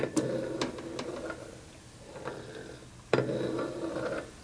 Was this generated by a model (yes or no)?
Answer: no